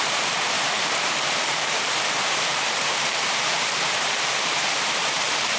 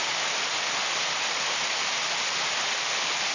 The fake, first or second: first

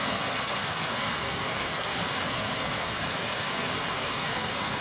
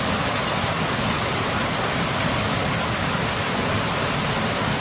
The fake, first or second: first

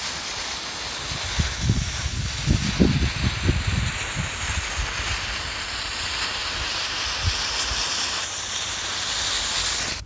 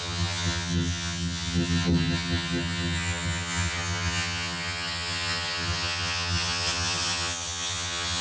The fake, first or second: second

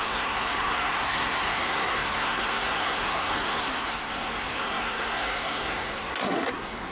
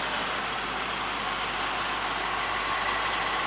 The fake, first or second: first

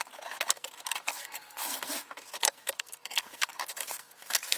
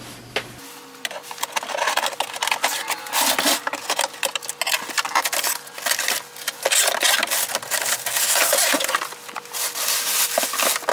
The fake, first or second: first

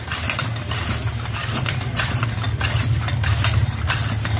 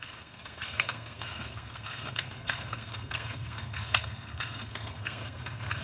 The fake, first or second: second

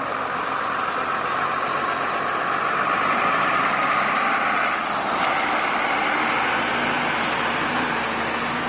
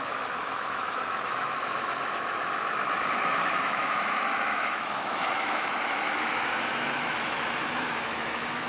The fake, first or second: second